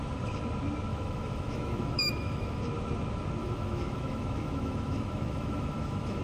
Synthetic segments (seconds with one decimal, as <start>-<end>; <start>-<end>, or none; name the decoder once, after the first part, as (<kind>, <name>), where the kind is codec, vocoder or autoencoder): 0.9-2.6 (autoencoder, DAC-VAE); 3.4-6.2